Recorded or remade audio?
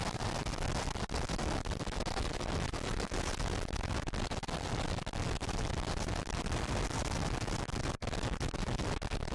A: recorded